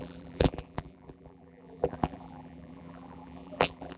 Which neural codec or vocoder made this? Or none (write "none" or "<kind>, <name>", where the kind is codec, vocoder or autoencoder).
vocoder, BigVGAN v2